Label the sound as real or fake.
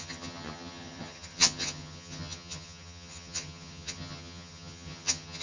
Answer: fake